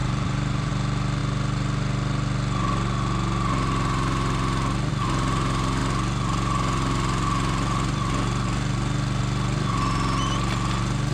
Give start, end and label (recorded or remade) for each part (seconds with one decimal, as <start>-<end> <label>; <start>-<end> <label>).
0.0-0.7 remade; 0.7-11.1 recorded